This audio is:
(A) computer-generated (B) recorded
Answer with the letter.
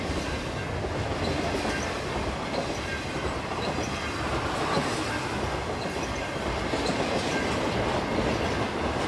B